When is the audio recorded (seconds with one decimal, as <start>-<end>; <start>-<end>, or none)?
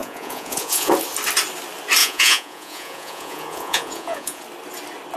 0.9-2.0; 4.4-5.2